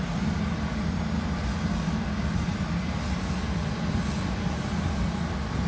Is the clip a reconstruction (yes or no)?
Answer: no